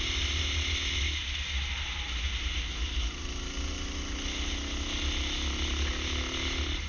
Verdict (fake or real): real